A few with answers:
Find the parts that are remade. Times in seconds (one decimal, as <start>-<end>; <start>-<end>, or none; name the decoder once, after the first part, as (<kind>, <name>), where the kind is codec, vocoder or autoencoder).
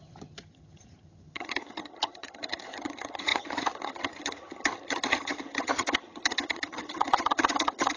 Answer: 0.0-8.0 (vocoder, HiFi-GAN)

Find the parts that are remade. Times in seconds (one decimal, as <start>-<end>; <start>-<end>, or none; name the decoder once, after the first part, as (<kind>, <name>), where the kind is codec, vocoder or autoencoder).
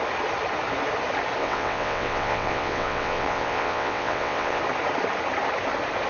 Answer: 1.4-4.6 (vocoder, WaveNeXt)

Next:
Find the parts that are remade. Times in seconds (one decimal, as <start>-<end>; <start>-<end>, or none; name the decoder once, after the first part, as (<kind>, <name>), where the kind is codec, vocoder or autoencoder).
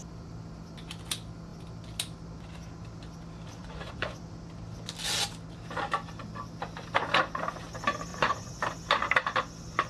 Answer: 3.6-4.2 (vocoder, Vocos); 8.1-8.6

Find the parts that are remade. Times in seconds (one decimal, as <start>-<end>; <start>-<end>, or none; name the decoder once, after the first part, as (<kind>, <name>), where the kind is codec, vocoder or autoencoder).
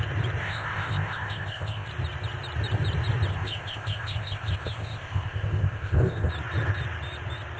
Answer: 0.4-1.9 (codec, ZipCodec); 3.3-6.3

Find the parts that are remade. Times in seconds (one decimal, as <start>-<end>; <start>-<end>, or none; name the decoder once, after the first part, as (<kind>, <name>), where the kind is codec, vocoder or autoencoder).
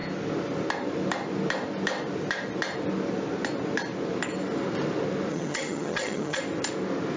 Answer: 5.3-6.4 (vocoder, HiFi-GAN)